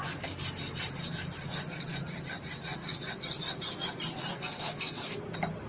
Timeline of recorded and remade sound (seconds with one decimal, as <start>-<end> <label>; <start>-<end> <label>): 0.0-4.3 recorded; 4.3-5.2 remade; 5.2-5.7 recorded